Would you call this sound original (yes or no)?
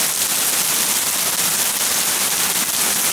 yes